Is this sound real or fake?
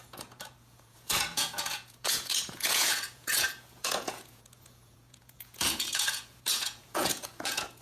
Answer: fake